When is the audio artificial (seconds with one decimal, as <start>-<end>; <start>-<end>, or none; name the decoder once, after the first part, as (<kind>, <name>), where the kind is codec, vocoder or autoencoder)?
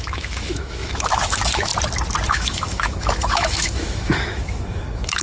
0.0-1.7 (autoencoder, DAC-VAE); 2.3-5.2